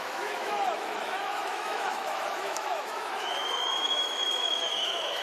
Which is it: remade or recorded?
remade